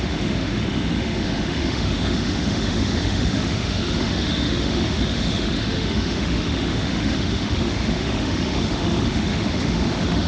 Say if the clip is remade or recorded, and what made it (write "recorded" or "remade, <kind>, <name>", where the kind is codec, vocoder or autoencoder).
remade, autoencoder, DAC-VAE